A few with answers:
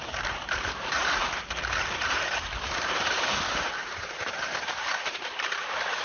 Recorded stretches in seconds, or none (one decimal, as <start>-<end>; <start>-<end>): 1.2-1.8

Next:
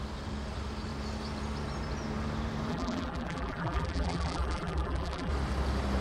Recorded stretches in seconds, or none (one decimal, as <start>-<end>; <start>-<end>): 0.0-2.7; 5.3-6.0

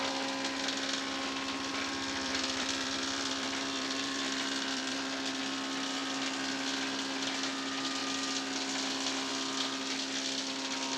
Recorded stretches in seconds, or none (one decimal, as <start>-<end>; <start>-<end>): 0.0-1.7; 5.4-6.0; 6.5-11.0

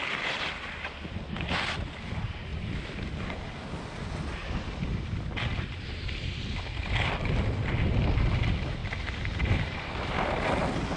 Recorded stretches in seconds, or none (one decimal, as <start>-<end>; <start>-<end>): 0.0-8.8; 9.9-11.0

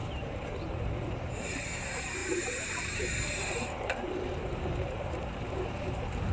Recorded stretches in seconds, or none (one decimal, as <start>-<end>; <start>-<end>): none